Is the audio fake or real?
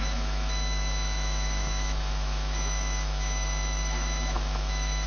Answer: fake